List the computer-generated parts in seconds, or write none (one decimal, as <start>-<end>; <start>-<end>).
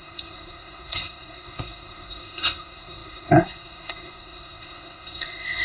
0.0-5.6